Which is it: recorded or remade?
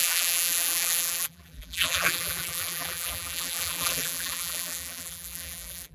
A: remade